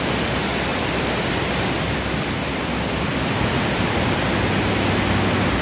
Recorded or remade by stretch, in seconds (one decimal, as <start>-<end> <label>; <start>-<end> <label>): 0.0-0.7 recorded; 0.7-4.1 remade; 4.1-5.6 recorded